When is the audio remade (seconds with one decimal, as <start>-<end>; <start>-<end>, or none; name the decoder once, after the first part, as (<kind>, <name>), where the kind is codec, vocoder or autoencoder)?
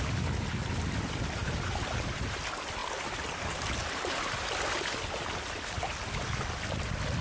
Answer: 1.4-2.4 (vocoder, BigVGAN v2)